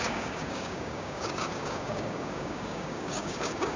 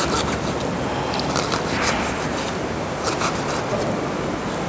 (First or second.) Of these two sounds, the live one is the second